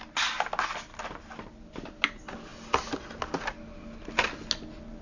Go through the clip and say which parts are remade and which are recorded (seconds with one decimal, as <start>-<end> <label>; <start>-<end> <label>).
0.0-5.0 recorded